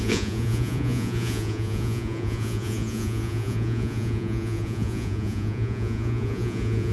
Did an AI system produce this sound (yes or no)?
yes